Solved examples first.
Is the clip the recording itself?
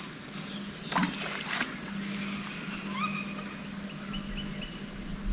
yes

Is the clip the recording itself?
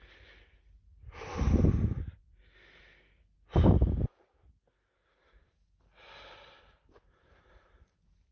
yes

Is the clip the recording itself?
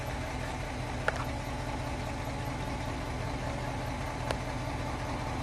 yes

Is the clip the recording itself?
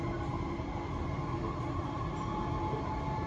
yes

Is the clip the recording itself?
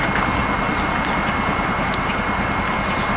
yes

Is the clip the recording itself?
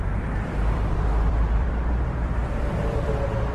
no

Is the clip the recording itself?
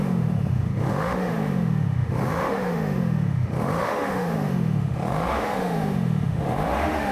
no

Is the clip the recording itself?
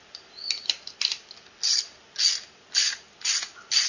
yes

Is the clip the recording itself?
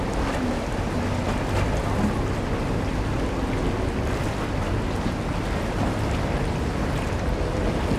yes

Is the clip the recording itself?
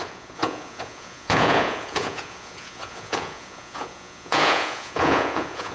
no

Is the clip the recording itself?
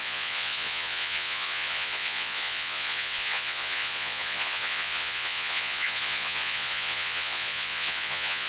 no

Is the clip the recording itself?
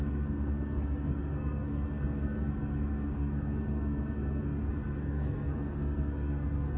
no